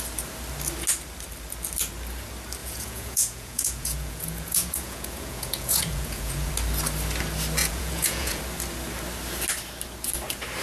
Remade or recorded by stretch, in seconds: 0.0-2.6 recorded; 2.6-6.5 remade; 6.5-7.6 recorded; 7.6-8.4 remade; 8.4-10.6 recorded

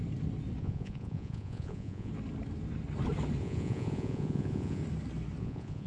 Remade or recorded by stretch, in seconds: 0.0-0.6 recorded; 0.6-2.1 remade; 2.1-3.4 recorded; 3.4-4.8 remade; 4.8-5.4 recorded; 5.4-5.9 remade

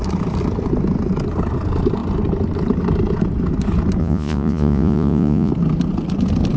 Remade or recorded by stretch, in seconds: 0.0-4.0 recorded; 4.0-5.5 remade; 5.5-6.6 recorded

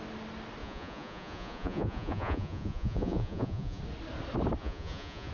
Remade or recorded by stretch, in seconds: 0.0-0.6 recorded; 0.6-3.8 remade; 3.8-4.6 recorded; 4.6-5.3 remade

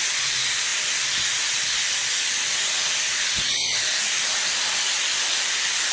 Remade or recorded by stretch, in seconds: 0.0-5.9 recorded

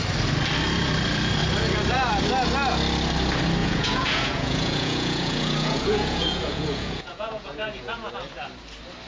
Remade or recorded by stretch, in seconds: 0.0-3.6 recorded; 3.6-8.1 remade; 8.1-9.1 recorded